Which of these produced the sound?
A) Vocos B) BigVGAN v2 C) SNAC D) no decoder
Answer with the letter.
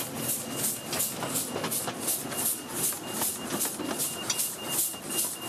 D